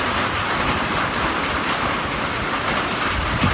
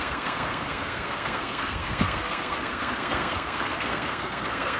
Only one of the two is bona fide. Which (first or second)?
first